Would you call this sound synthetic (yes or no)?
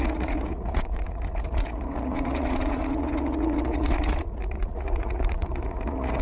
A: yes